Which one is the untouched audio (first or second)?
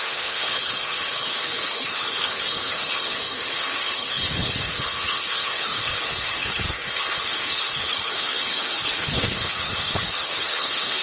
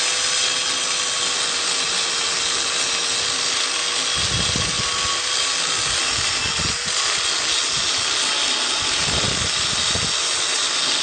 second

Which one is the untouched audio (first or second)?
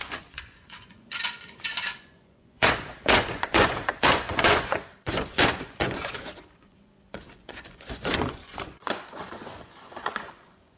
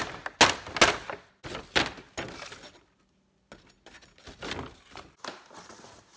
second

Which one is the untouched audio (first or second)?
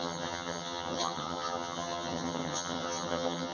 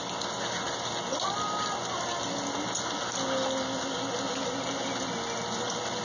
second